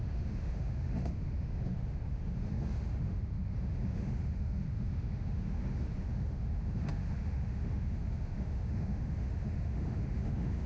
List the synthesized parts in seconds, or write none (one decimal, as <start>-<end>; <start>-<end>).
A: 0.0-10.7